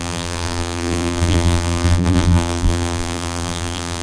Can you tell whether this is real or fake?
fake